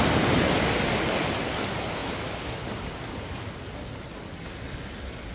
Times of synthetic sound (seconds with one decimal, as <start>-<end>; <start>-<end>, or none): none